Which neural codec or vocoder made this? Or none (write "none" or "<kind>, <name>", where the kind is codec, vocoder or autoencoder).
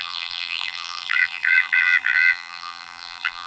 vocoder, BigVGAN v2